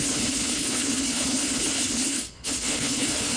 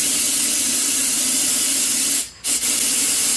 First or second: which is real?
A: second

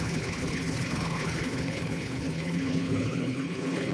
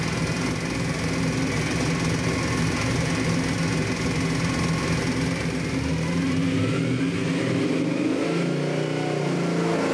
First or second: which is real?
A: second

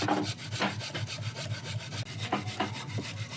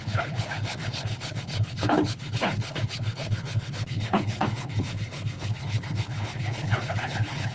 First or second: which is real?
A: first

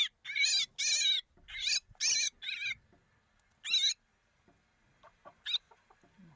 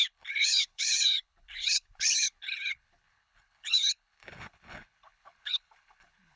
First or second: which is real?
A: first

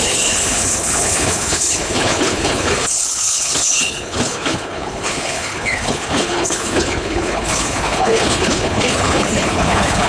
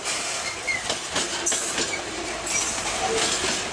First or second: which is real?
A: second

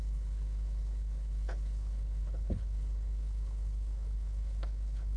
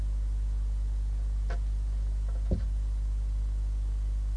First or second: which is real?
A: second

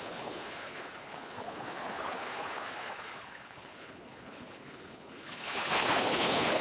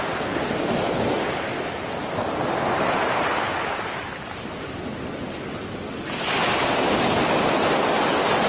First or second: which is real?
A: second